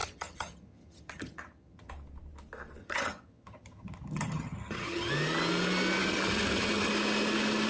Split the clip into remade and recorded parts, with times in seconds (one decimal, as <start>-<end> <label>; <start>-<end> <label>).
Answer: 0.0-1.9 remade; 1.9-2.8 recorded; 2.8-5.1 remade; 5.1-6.0 recorded; 6.0-6.9 remade; 6.9-7.7 recorded